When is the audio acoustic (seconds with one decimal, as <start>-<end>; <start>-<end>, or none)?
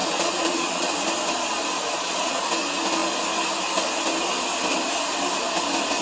0.9-1.9; 2.4-6.0